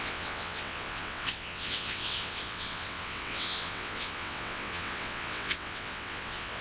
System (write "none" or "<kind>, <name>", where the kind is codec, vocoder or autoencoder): vocoder, WaveNeXt